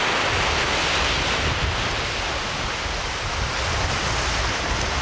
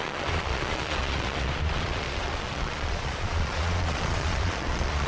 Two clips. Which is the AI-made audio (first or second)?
second